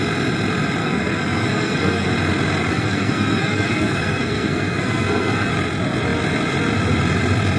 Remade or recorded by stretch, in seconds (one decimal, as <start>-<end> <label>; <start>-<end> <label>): 0.0-0.8 recorded; 0.8-2.1 remade; 2.1-2.7 recorded; 2.7-5.5 remade; 5.5-7.6 recorded